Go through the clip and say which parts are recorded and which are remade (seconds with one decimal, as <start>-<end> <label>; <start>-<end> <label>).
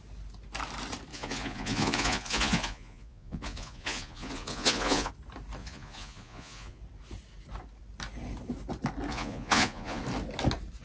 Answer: 0.0-1.1 recorded; 1.1-5.1 remade; 5.1-5.6 recorded; 5.6-6.8 remade; 6.8-9.1 recorded; 9.1-10.0 remade; 10.0-10.8 recorded